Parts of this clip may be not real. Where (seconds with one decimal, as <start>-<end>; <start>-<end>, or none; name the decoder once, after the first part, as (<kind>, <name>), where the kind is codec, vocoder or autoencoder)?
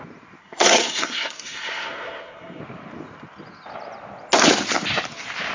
0.4-2.6 (codec, SNAC)